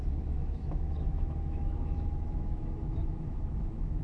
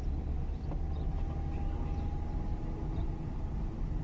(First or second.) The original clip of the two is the second